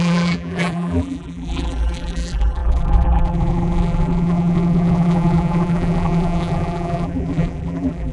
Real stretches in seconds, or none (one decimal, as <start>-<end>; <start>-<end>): none